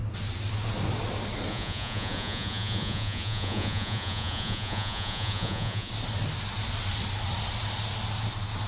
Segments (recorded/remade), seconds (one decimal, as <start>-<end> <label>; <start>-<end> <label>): 0.0-1.5 recorded; 1.5-5.9 remade; 5.9-8.7 recorded